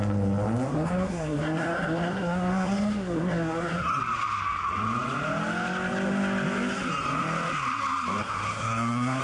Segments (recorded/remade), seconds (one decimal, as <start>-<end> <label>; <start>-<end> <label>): 0.0-0.7 recorded; 0.7-4.0 remade; 4.0-8.2 recorded; 8.2-9.2 remade